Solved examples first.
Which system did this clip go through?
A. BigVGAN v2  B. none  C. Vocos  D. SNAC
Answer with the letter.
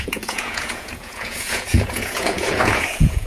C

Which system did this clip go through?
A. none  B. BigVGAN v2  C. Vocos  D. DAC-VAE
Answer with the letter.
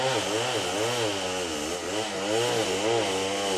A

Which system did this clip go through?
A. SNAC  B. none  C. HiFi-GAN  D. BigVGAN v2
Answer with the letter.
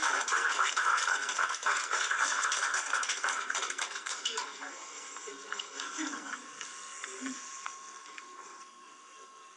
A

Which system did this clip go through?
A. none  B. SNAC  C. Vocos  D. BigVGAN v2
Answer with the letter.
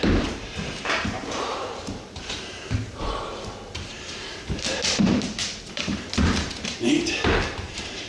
D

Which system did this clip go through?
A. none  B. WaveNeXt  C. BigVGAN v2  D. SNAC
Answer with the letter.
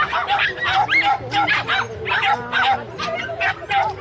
A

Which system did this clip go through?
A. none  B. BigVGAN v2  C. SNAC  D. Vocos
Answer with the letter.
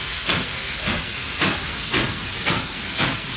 C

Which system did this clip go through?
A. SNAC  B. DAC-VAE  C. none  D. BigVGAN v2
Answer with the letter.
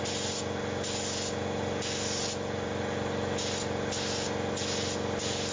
C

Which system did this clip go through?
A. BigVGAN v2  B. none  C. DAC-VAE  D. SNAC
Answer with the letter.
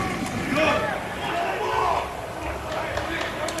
A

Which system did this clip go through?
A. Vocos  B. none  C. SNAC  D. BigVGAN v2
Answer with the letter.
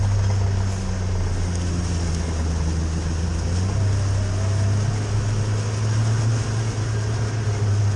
B